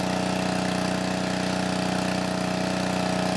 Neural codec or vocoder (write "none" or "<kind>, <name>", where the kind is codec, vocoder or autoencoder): none